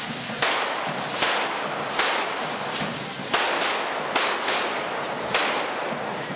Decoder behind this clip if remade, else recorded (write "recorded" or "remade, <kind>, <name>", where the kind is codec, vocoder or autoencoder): recorded